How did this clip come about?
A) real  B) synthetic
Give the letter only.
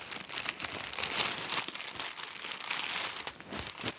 A